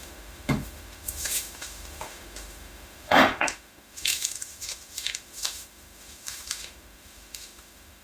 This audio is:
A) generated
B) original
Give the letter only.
A